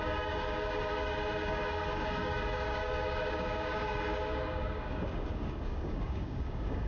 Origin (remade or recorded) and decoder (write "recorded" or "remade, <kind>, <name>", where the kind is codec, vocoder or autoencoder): remade, codec, DAC